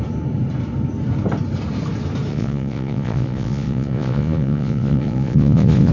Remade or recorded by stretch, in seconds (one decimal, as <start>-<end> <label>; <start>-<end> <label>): 0.0-2.3 recorded; 2.3-5.9 remade